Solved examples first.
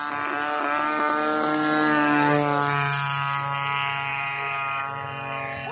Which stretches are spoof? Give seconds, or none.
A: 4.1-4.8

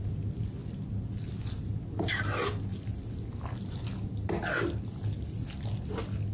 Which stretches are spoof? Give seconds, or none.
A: none

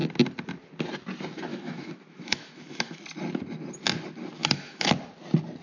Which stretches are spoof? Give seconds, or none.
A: 1.5-3.0; 4.4-4.9

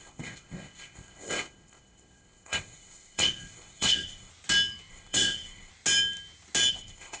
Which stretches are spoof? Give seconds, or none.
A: 0.0-4.3; 4.9-5.7; 6.7-7.2

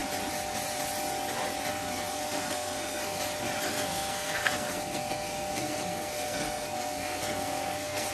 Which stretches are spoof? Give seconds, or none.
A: 1.7-3.2; 3.7-8.1

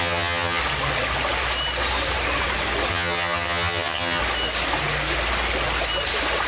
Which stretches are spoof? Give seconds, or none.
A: 0.0-0.6; 2.9-4.2

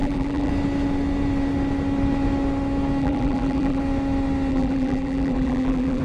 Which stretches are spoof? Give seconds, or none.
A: 0.0-0.5; 3.0-3.8; 4.5-6.0

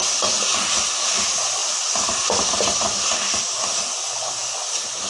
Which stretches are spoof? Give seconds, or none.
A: none